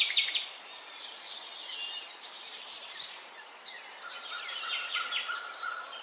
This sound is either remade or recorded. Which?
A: remade